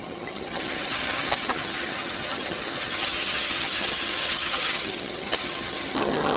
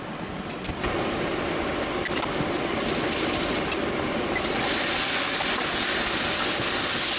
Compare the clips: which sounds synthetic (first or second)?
first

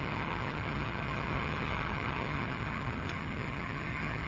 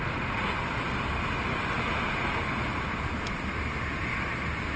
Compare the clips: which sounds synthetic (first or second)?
first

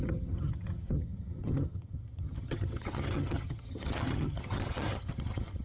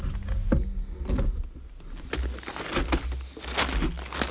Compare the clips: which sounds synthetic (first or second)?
first